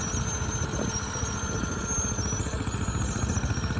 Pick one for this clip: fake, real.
real